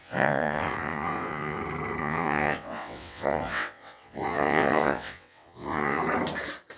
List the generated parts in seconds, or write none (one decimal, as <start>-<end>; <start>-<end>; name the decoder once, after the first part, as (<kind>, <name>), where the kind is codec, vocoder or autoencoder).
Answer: 0.0-1.6 (vocoder, WaveNeXt); 2.0-6.0